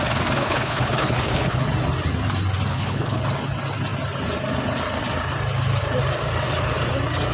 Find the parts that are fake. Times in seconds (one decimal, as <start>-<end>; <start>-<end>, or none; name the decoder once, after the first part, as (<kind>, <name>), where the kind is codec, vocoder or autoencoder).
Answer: 0.4-1.6 (codec, HILCodec); 2.7-3.2